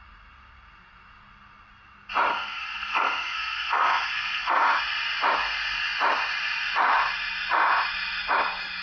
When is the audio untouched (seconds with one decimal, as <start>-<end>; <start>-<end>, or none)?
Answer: 0.0-2.3; 4.8-8.8